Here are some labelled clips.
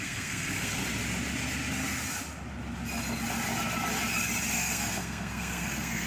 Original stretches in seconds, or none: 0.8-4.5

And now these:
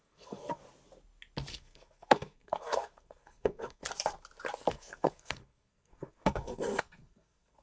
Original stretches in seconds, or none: 0.6-1.5; 3.8-4.7

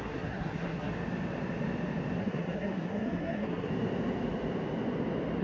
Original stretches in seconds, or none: 0.9-2.2; 3.7-5.4

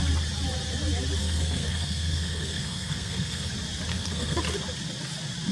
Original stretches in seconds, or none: 0.0-1.2; 3.5-3.9; 4.4-5.5